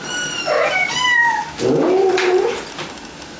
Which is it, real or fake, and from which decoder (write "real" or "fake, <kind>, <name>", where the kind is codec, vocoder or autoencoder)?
real